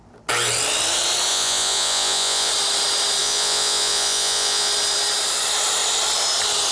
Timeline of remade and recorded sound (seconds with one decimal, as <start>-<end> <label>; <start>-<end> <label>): 0.0-1.3 recorded; 1.3-2.5 remade; 2.5-3.2 recorded; 3.2-4.7 remade; 4.7-6.7 recorded